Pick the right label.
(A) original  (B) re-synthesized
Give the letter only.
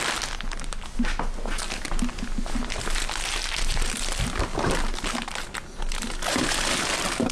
A